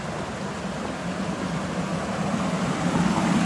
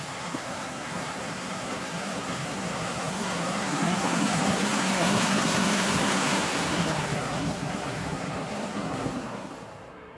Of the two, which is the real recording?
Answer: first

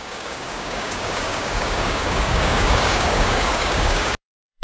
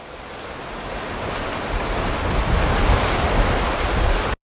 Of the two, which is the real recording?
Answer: second